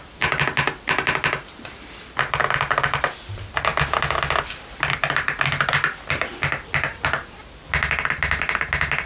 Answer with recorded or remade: recorded